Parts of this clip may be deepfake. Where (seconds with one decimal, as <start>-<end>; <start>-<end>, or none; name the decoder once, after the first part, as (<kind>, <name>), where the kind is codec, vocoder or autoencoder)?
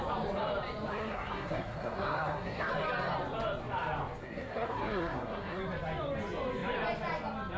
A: 0.9-2.7 (codec, SNAC); 4.2-5.6